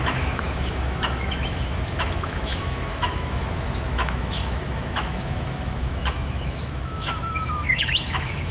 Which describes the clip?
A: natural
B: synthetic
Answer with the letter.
B